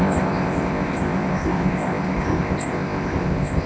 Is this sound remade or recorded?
remade